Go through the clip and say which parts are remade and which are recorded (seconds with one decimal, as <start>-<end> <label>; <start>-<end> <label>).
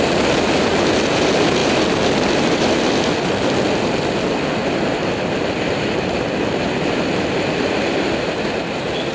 0.0-9.1 recorded